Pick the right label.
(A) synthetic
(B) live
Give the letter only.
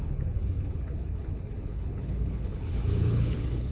A